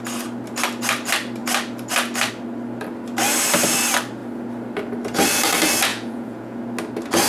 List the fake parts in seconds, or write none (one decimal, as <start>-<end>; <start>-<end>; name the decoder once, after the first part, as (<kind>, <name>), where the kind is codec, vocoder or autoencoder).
5.9-6.6 (vocoder, Vocos)